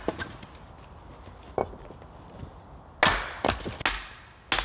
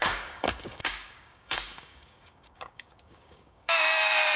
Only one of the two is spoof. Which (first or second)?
second